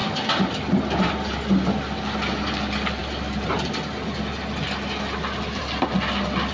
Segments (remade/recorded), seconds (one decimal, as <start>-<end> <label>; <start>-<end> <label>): 0.0-1.5 remade; 1.5-6.5 recorded